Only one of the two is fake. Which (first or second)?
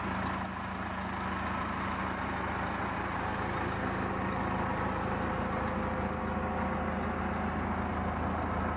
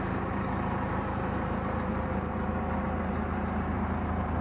second